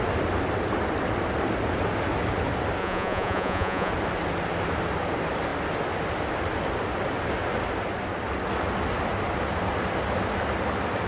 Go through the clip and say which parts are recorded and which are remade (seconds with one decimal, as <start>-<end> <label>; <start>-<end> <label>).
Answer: 0.0-2.8 recorded; 2.8-3.9 remade; 3.9-11.1 recorded